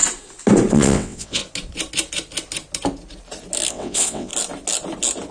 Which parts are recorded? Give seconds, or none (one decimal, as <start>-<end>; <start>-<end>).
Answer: 0.0-0.7; 1.4-3.7; 4.3-5.3